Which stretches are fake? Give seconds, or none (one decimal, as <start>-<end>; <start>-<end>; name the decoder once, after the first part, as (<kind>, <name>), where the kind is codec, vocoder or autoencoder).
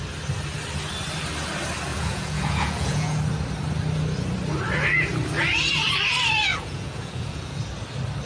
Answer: 1.9-3.2 (vocoder, Vocos); 6.5-7.6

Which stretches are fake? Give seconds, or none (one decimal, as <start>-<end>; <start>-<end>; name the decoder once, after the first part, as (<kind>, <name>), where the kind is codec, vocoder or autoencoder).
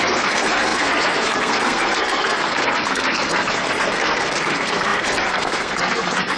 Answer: 0.0-6.4 (codec, SNAC)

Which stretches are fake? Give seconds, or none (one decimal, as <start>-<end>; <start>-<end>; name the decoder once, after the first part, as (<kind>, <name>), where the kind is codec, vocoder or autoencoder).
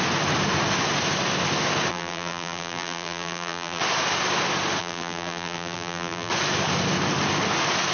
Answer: 1.9-3.8 (vocoder, BigVGAN v2); 4.8-6.3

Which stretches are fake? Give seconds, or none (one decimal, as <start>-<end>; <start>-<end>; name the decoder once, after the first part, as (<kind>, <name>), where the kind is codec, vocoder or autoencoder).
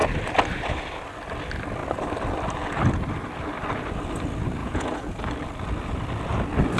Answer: 4.6-5.3 (vocoder, Vocos)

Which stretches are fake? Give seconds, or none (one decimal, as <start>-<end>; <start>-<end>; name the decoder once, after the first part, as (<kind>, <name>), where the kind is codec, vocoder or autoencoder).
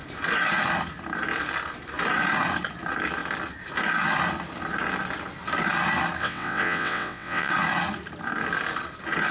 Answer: 6.2-7.5 (vocoder, WaveNeXt)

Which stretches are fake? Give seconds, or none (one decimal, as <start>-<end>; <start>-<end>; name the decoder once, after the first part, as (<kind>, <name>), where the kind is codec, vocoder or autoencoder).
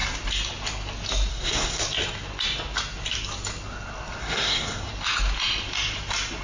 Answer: 1.3-1.8 (codec, SNAC); 4.2-4.9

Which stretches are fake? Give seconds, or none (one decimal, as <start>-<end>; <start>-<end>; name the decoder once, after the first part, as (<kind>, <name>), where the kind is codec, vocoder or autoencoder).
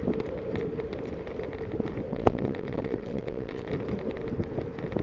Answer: 2.1-3.7 (vocoder, WaveNeXt)